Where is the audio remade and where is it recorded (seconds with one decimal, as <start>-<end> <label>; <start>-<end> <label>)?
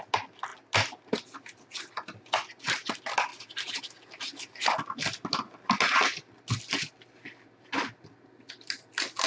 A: 0.0-3.3 recorded; 3.3-3.8 remade; 3.8-9.3 recorded